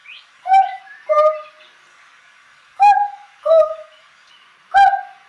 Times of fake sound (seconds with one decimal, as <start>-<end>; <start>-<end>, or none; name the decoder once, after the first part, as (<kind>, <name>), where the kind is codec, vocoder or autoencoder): 0.0-0.8 (codec, DAC); 1.9-4.3